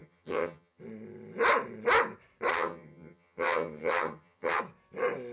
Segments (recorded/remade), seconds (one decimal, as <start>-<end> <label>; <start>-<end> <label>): 0.0-0.8 remade; 0.8-2.5 recorded; 2.5-4.6 remade; 4.6-5.3 recorded